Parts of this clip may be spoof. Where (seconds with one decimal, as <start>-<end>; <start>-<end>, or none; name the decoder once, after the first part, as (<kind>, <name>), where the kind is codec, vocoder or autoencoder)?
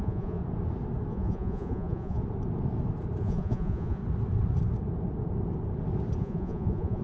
0.0-0.4 (vocoder, Vocos); 1.1-2.2; 3.2-4.0; 6.2-7.0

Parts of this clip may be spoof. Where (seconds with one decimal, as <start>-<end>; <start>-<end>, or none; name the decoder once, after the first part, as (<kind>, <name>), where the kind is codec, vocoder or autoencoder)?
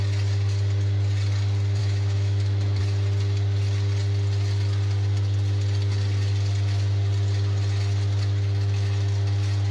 1.8-2.8 (autoencoder, DAC-VAE)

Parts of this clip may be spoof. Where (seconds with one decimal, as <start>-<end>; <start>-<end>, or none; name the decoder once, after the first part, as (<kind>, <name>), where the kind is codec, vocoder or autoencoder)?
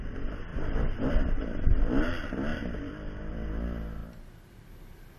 0.5-1.1 (vocoder, BigVGAN v2); 2.5-3.3; 4.0-4.7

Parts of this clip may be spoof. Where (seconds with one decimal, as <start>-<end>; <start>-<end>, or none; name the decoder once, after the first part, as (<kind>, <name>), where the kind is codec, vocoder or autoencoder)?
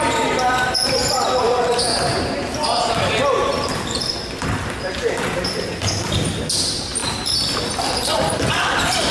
0.0-1.9 (vocoder, BigVGAN v2); 3.0-9.1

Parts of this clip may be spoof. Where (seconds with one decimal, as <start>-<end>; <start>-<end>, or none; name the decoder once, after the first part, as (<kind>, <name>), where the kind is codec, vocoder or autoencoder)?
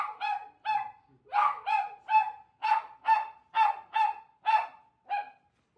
none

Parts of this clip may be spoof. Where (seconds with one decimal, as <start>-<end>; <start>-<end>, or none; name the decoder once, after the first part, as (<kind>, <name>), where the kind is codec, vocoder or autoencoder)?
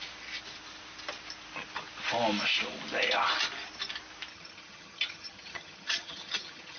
4.3-6.8 (vocoder, HiFi-GAN)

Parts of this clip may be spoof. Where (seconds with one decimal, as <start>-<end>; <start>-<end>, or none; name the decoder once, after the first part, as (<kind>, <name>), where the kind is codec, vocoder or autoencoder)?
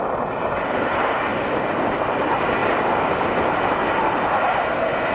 2.6-3.6 (vocoder, BigVGAN v2)